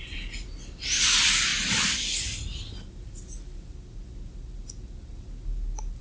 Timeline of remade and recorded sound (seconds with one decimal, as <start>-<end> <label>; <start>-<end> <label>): 0.0-6.0 recorded